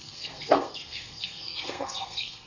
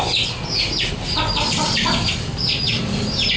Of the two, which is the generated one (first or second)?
first